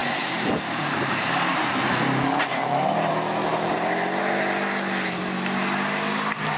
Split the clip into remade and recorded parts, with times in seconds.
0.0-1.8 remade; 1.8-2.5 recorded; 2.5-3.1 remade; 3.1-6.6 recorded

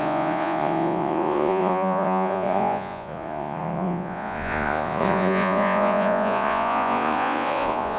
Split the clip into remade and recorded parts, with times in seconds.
0.0-8.0 remade

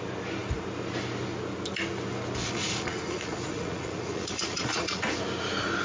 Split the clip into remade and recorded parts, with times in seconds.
0.0-2.4 recorded; 2.4-5.0 remade; 5.0-5.8 recorded